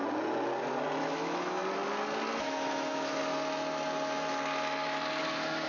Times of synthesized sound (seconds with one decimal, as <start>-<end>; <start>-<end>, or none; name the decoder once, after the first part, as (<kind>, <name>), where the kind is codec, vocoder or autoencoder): 1.0-1.6 (autoencoder, DAC-VAE); 2.4-3.2; 5.2-5.7